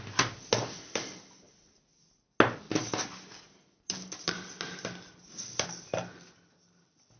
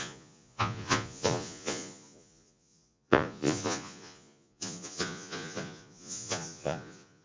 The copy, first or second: second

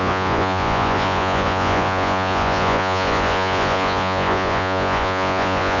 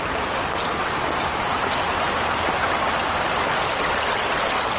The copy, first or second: first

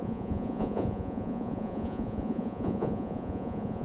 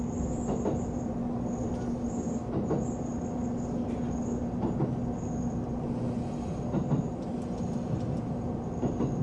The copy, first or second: first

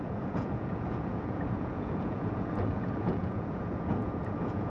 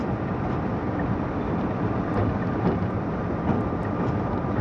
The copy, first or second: first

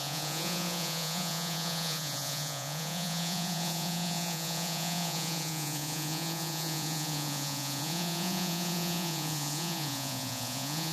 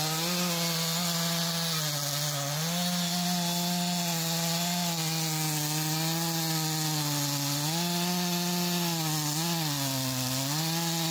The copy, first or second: first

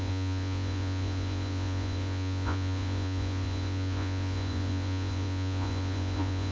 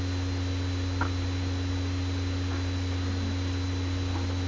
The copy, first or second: first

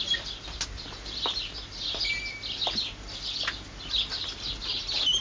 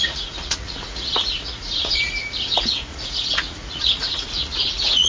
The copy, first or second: second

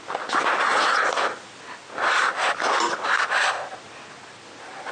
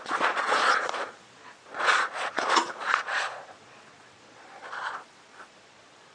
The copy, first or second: second